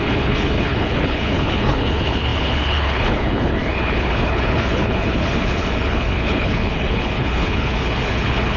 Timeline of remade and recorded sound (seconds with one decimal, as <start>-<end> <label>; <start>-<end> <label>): 0.0-8.6 remade